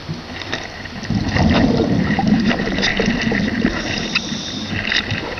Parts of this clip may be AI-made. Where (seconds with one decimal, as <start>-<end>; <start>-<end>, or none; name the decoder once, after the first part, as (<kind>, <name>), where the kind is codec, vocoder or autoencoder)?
2.0-2.9 (vocoder, BigVGAN v2); 4.7-5.4